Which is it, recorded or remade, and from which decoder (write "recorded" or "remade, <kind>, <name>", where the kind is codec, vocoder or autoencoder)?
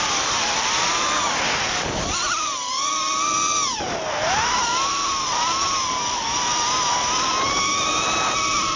remade, vocoder, BigVGAN v2